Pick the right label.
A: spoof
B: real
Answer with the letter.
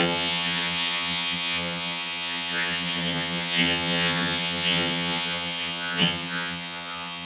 A